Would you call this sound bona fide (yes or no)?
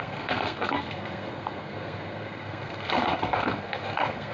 no